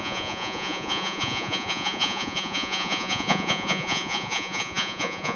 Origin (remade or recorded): remade